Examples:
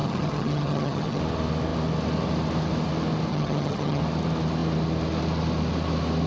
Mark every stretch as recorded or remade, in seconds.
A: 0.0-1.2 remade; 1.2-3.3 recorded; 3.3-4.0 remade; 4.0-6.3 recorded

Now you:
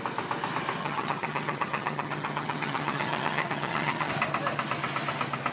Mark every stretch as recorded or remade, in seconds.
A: 0.0-0.8 recorded; 0.8-4.1 remade; 4.1-5.5 recorded

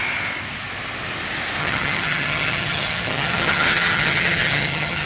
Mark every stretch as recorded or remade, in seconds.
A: 0.0-1.6 recorded; 1.6-5.1 remade

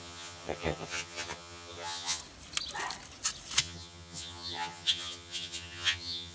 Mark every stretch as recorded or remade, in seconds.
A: 0.0-2.2 remade; 2.2-3.6 recorded; 3.6-6.3 remade

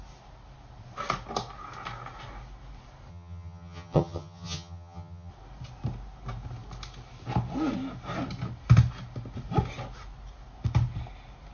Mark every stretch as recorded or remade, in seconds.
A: 0.0-3.1 recorded; 3.1-5.3 remade; 5.3-11.5 recorded

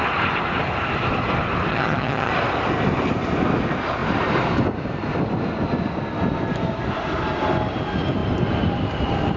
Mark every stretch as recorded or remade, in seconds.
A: 0.0-1.7 recorded; 1.7-2.3 remade; 2.3-9.4 recorded

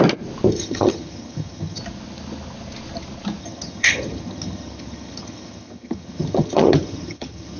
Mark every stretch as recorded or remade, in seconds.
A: 0.0-0.5 recorded; 0.5-1.8 remade; 1.8-3.4 recorded; 3.4-7.6 remade

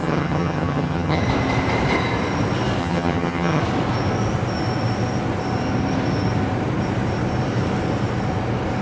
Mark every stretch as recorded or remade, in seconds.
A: 0.0-1.2 remade; 1.2-2.8 recorded; 2.8-3.6 remade; 3.6-8.8 recorded